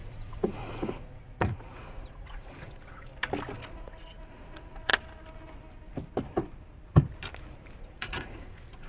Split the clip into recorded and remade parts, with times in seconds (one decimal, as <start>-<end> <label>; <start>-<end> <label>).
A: 0.0-3.1 remade; 3.1-3.7 recorded; 3.7-4.9 remade; 4.9-7.8 recorded; 7.8-8.9 remade